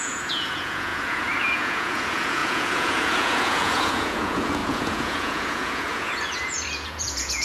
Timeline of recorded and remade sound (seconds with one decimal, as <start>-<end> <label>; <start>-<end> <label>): 0.0-7.4 remade